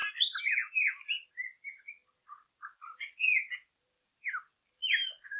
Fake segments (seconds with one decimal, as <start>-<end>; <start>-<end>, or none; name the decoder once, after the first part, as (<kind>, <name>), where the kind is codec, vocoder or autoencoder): none